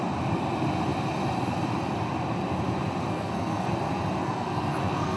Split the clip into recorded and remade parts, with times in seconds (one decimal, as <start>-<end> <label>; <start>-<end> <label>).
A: 0.0-3.1 recorded; 3.1-3.7 remade; 3.7-4.2 recorded; 4.2-5.2 remade